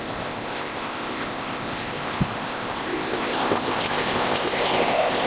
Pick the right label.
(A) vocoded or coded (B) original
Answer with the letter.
A